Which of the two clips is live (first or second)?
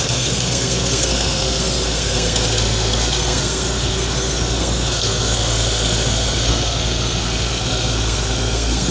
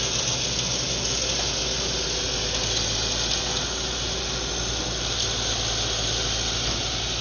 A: second